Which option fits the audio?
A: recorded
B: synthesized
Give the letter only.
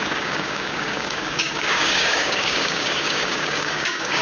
B